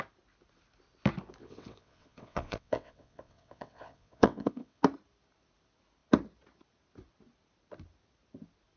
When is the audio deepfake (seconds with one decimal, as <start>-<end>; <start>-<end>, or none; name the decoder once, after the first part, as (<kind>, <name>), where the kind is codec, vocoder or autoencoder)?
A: 1.4-4.8 (vocoder, WaveNeXt)